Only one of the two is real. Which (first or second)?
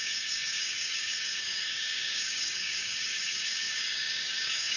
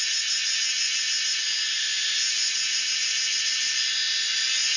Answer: second